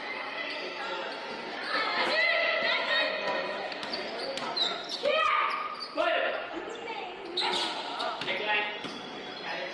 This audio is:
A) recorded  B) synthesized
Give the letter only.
A